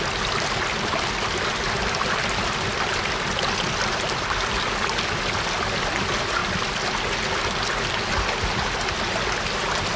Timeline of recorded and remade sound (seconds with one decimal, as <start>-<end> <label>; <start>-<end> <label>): 0.0-10.0 recorded